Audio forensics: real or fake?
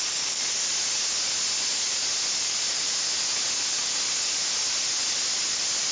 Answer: real